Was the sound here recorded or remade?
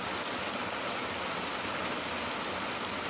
recorded